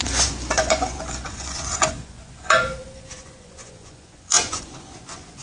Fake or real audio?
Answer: fake